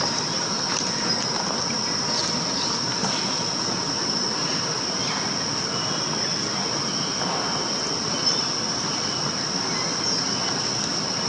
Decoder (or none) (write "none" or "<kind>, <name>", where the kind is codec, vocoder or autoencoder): none